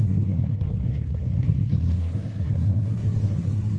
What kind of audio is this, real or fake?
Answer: fake